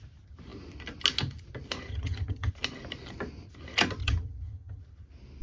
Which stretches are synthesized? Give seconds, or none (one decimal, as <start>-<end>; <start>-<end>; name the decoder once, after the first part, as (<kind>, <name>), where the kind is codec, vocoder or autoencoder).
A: 1.9-2.5 (vocoder, HiFi-GAN); 4.0-4.8